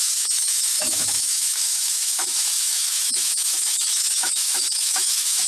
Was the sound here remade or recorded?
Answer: remade